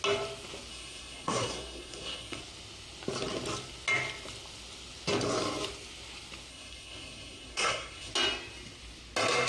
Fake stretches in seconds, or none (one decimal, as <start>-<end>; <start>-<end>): 0.7-2.4; 6.5-8.1